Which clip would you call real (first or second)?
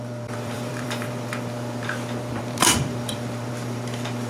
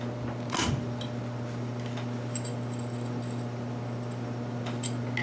second